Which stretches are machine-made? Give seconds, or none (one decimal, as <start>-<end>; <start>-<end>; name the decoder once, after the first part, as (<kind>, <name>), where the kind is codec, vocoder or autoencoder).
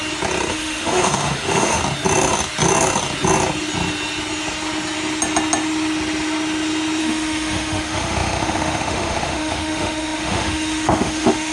0.5-1.8 (autoencoder, DAC-VAE); 7.0-11.5